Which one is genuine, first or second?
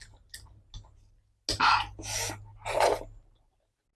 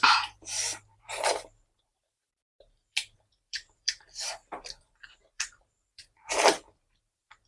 first